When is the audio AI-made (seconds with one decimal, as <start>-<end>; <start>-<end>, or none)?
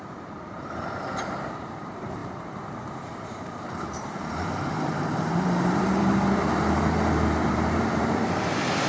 0.0-8.9